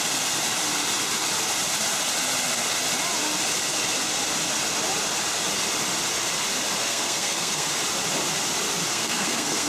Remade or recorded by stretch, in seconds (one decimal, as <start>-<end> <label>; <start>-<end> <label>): 0.0-6.8 recorded; 6.8-7.7 remade; 7.7-8.9 recorded; 8.9-9.7 remade